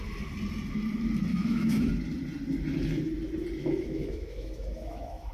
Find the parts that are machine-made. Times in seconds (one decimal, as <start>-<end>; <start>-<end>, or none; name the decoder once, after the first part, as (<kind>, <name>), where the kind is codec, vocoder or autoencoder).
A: 1.3-1.9 (autoencoder, DAC-VAE); 3.6-5.3